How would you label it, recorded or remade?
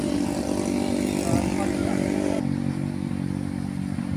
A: recorded